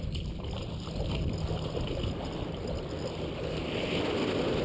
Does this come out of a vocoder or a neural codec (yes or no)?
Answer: no